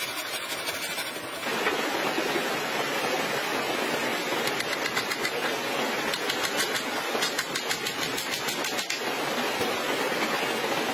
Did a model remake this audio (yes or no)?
no